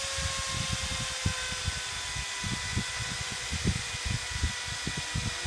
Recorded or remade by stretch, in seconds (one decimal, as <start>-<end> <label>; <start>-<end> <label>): 0.0-2.7 recorded; 2.7-3.9 remade; 3.9-5.5 recorded